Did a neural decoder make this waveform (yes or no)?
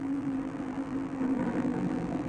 yes